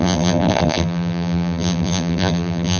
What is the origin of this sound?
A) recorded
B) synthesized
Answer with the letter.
B